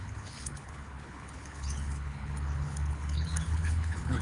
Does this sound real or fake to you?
fake